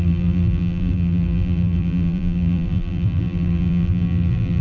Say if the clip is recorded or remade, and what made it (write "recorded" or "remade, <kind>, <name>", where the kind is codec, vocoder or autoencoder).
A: remade, vocoder, BigVGAN v2